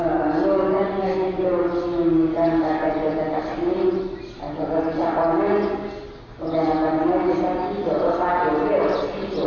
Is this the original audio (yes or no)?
yes